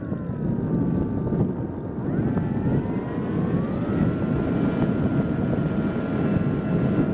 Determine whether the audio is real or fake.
real